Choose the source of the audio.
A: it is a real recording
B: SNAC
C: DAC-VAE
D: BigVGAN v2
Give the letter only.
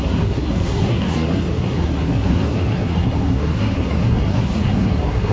B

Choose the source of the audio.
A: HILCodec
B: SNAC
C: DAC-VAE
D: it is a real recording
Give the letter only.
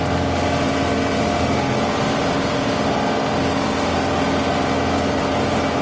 D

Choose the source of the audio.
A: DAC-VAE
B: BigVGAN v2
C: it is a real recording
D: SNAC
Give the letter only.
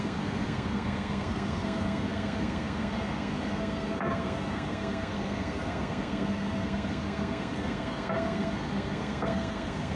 D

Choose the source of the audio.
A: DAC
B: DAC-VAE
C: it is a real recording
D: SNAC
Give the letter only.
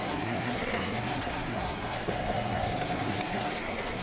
D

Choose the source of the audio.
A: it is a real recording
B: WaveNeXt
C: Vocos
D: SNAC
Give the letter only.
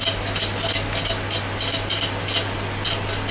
A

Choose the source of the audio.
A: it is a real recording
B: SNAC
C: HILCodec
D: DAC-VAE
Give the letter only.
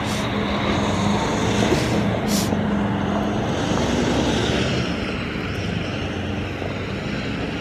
A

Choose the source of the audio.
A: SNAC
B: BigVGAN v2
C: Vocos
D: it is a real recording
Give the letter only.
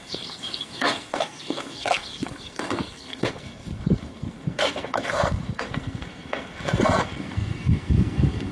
A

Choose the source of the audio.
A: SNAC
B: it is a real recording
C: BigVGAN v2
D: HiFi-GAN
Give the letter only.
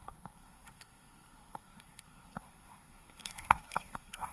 A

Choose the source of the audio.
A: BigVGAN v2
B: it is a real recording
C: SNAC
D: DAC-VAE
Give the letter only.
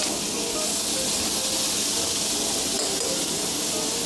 B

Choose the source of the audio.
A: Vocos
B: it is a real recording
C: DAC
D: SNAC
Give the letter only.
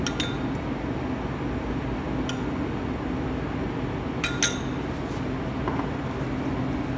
B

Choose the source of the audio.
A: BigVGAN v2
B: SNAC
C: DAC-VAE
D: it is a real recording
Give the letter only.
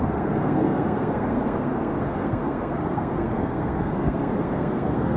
B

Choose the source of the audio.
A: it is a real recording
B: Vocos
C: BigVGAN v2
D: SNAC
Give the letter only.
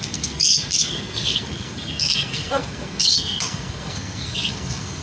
D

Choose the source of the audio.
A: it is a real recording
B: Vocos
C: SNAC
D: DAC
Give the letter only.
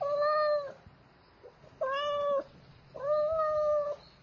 A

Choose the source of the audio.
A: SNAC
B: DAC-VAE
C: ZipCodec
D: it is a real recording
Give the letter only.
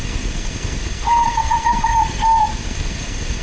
A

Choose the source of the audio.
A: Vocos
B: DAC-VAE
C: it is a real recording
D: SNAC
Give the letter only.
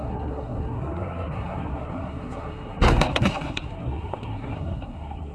D